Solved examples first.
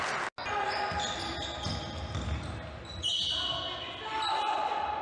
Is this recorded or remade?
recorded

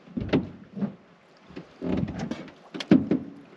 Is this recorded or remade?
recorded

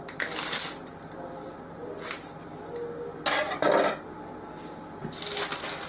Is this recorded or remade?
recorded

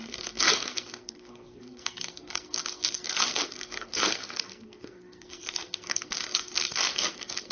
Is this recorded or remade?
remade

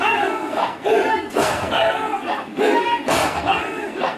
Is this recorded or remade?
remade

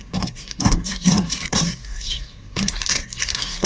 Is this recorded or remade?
remade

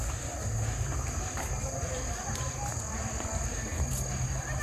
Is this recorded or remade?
recorded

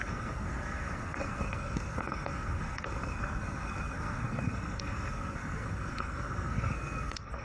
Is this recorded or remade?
remade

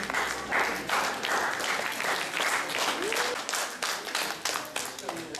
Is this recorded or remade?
recorded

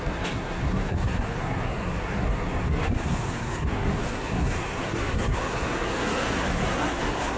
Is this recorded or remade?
remade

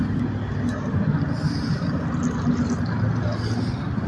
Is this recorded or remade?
recorded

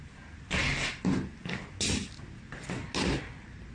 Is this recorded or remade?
recorded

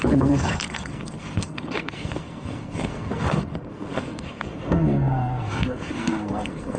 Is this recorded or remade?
remade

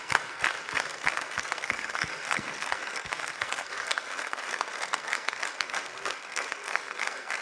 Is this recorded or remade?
remade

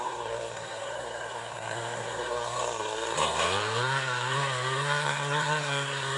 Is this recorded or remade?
remade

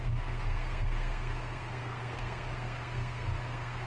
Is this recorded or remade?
remade